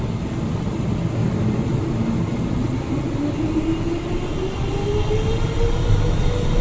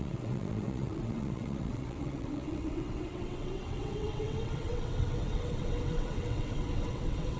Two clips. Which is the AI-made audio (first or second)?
second